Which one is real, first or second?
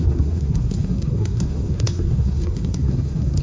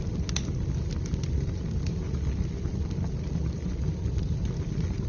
second